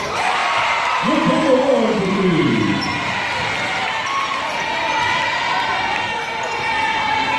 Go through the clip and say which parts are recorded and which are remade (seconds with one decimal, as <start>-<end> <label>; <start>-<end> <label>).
0.0-7.4 recorded